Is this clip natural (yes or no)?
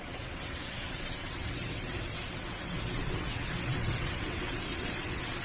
no